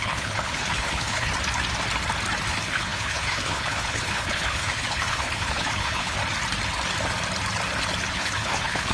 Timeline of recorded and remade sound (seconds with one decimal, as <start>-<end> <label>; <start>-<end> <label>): 0.0-1.3 remade; 1.3-2.5 recorded; 2.5-6.2 remade; 6.2-8.1 recorded; 8.1-8.9 remade